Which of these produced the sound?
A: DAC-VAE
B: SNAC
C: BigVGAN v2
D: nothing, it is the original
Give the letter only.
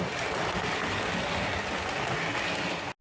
D